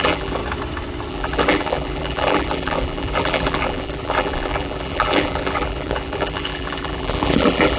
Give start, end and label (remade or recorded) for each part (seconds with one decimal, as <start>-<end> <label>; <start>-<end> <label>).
0.0-0.4 remade; 0.4-1.1 recorded; 1.1-7.8 remade

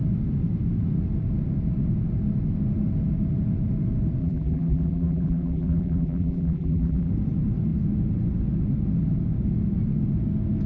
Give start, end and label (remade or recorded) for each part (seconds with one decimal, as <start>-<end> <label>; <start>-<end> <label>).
0.0-4.2 recorded; 4.2-7.1 remade; 7.1-10.7 recorded

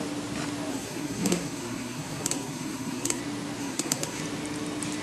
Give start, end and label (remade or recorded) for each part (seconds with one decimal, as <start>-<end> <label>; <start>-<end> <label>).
0.0-0.7 recorded; 0.7-3.2 remade; 3.2-3.6 recorded; 3.6-4.2 remade; 4.2-5.0 recorded

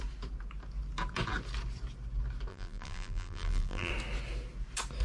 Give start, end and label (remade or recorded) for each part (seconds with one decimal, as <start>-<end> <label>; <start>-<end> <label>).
0.0-2.5 recorded; 2.5-3.9 remade; 3.9-5.0 recorded

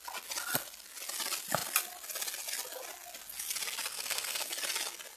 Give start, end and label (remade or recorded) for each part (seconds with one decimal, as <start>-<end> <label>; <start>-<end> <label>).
0.0-3.9 recorded; 3.9-4.5 remade; 4.5-5.2 recorded

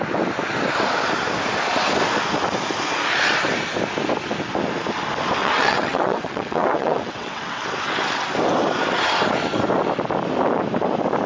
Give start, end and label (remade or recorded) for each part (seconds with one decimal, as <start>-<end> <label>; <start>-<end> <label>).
0.0-5.4 recorded; 5.4-7.6 remade; 7.6-11.3 recorded

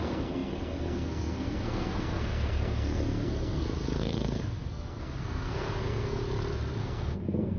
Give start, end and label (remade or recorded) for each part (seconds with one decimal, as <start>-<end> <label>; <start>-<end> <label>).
0.0-6.2 remade; 6.2-6.8 recorded; 6.8-7.6 remade

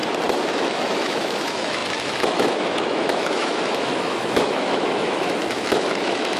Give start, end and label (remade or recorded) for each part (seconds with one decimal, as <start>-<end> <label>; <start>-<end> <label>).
0.0-0.5 recorded; 0.5-6.4 remade